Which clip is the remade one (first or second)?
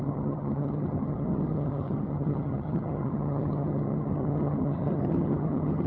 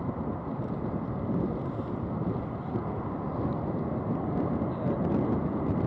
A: first